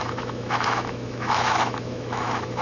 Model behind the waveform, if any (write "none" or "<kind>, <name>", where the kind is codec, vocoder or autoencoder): autoencoder, DAC-VAE